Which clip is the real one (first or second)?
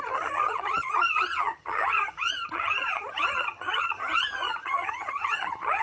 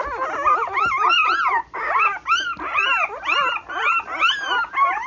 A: second